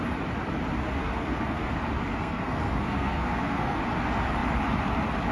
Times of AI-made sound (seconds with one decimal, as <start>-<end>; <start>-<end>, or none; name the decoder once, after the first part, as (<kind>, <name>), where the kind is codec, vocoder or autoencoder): 1.0-1.7 (codec, SNAC); 2.1-3.8